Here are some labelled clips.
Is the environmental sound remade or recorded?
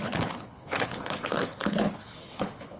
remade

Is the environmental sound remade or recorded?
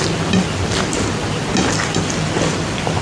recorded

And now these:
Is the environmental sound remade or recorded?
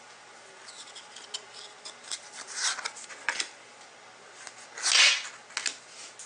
recorded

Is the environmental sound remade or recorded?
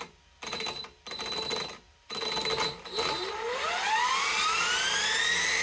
recorded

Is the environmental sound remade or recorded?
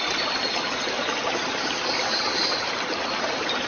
recorded